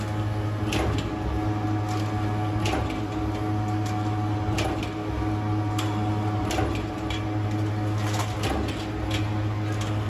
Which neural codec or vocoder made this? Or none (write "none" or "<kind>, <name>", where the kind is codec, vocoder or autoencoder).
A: none